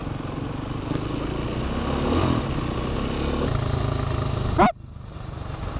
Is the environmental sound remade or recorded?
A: recorded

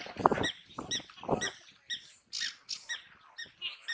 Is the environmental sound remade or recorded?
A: recorded